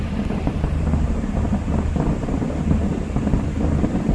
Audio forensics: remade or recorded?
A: recorded